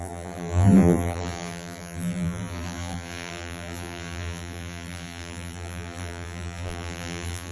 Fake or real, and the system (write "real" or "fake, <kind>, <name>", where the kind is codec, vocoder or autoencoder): fake, vocoder, BigVGAN v2